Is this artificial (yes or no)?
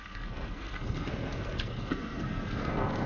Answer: yes